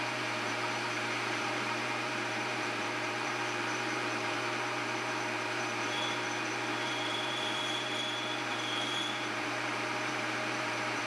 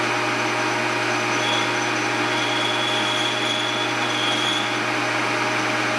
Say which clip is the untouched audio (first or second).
second